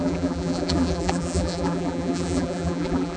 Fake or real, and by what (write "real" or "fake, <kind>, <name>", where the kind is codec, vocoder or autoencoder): fake, vocoder, BigVGAN v2